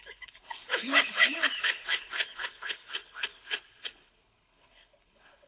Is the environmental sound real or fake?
fake